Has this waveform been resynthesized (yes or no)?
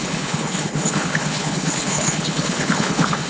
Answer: yes